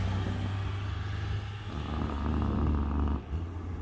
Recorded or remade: recorded